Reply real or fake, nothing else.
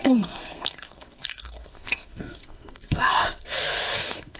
fake